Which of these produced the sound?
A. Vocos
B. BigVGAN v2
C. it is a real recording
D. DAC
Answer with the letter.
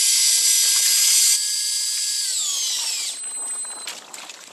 C